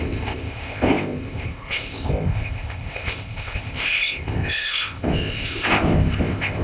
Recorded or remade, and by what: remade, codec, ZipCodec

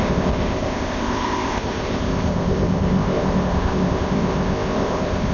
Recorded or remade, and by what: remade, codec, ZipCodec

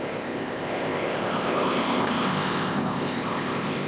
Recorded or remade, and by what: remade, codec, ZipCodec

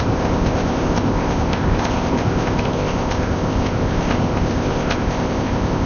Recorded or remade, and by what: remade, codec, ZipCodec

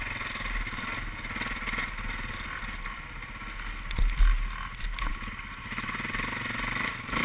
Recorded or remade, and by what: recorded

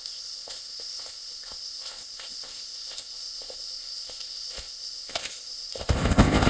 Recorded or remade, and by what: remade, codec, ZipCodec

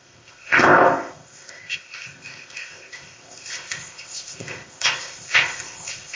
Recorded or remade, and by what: remade, codec, ZipCodec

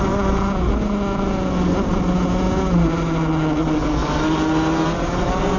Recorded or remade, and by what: recorded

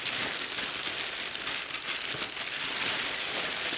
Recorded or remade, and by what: recorded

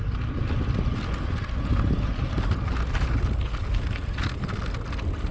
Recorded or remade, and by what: recorded